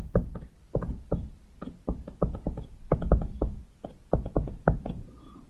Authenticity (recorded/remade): recorded